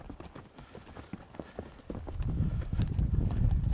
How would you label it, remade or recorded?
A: recorded